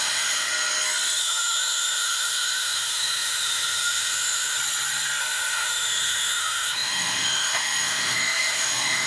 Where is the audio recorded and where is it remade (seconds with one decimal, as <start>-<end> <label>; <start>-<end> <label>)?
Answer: 0.0-0.5 remade; 0.5-1.2 recorded; 1.2-4.6 remade; 4.6-5.2 recorded; 5.2-9.1 remade